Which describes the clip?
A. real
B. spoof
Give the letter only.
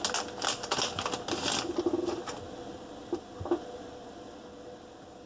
A